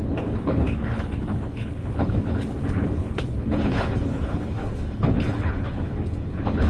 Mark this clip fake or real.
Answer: fake